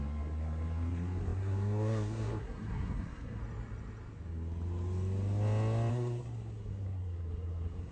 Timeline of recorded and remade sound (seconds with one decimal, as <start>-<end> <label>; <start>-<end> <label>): 0.0-3.4 remade; 3.4-5.9 recorded; 5.9-7.9 remade